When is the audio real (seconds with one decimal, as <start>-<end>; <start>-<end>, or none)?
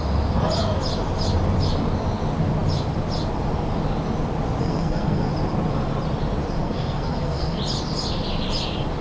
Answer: 0.0-4.6; 5.3-6.6; 7.6-9.0